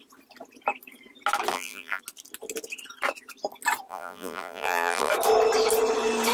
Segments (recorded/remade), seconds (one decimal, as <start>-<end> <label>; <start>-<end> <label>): 0.0-1.5 recorded; 1.5-2.0 remade; 2.0-3.9 recorded; 3.9-5.1 remade; 5.1-6.3 recorded